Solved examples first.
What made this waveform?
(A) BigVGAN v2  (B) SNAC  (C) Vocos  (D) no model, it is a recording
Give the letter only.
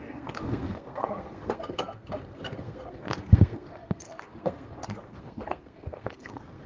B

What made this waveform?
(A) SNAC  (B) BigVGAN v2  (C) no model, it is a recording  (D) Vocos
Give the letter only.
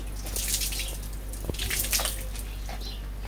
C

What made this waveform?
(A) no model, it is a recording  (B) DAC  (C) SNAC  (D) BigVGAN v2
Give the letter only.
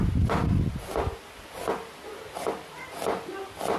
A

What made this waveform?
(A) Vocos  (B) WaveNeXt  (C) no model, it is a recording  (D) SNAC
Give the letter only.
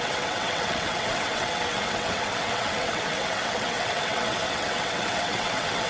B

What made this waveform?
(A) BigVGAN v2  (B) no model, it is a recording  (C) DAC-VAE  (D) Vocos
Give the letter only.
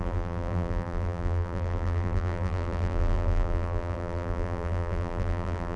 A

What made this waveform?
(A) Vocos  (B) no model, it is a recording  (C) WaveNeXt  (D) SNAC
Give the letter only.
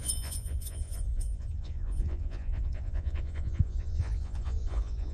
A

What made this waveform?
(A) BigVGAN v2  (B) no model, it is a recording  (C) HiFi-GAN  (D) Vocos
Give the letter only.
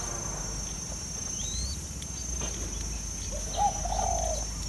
B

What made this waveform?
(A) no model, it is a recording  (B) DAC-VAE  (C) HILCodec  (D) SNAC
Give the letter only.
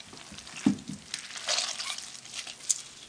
A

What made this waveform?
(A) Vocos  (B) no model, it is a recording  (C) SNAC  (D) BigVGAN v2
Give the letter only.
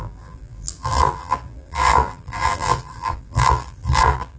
D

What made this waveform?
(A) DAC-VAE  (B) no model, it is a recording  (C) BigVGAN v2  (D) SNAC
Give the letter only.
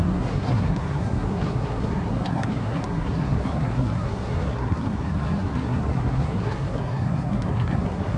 D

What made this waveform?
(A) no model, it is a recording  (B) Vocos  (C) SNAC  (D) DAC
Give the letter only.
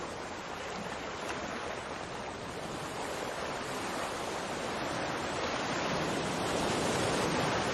A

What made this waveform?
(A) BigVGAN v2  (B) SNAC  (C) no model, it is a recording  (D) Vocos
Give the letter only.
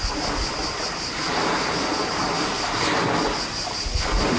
C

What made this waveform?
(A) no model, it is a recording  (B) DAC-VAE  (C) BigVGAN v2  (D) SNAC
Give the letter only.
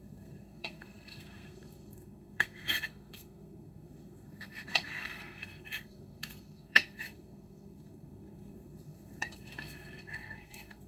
D